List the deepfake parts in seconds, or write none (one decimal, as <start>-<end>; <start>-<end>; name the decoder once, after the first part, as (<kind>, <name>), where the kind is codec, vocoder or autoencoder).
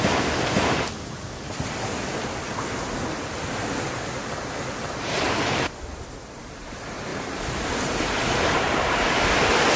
7.1-9.3 (vocoder, BigVGAN v2)